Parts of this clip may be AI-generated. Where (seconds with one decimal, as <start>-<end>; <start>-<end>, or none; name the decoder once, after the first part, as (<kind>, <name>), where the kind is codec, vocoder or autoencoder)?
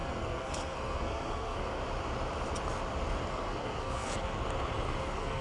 0.0-1.8 (codec, SNAC); 3.3-4.4; 5.0-5.4